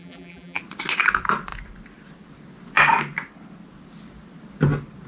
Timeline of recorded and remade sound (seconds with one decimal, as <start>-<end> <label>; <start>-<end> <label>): 0.0-0.6 remade; 0.6-5.1 recorded